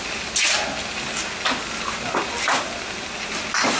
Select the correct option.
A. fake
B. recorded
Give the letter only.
B